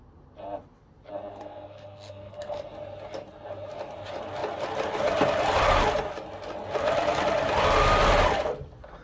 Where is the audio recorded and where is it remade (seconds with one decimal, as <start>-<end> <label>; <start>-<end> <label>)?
0.0-1.3 recorded; 1.3-2.6 remade; 2.6-9.0 recorded